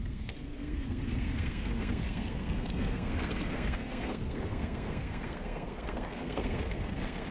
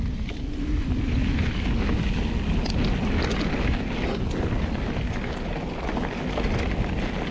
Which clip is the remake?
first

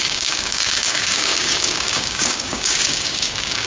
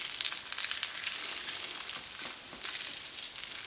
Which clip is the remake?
first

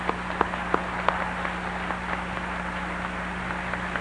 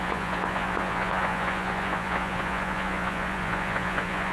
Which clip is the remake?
second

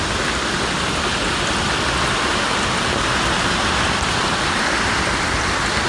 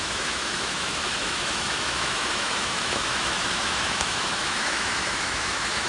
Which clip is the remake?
second